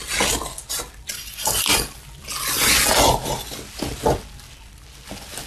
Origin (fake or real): real